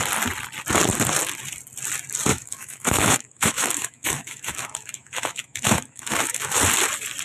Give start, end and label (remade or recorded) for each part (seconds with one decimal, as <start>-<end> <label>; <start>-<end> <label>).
0.0-2.3 recorded; 2.3-6.6 remade; 6.6-7.2 recorded